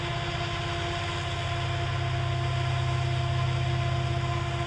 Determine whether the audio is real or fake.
real